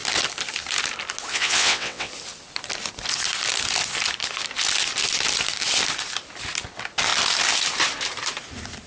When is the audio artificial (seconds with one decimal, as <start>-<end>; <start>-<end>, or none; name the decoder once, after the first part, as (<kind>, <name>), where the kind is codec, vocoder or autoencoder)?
1.3-2.1 (vocoder, WaveNeXt)